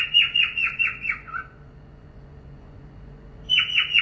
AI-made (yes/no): yes